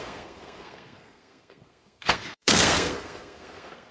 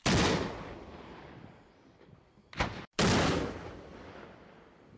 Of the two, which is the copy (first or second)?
first